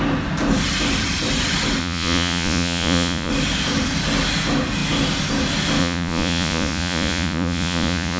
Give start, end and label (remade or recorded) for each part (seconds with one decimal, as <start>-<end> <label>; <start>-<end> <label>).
0.0-1.8 recorded; 1.8-3.3 remade; 3.3-5.8 recorded; 5.8-8.2 remade